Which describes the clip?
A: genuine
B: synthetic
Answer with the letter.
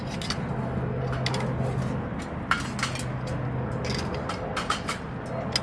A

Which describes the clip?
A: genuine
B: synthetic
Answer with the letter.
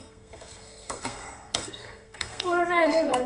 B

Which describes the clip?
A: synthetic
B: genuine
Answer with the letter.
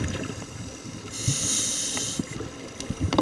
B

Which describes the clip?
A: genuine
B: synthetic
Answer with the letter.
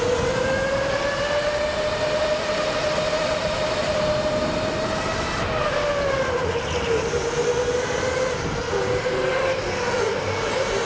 A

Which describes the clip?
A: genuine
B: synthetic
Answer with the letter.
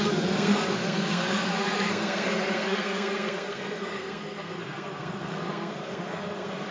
B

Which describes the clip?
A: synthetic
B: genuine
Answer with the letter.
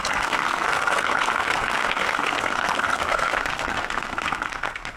A